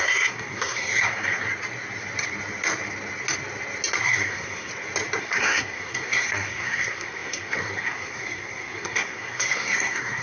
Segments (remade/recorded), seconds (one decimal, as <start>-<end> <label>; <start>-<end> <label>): 0.0-1.5 remade; 1.5-4.0 recorded; 4.0-4.7 remade; 4.7-5.2 recorded; 5.2-10.2 remade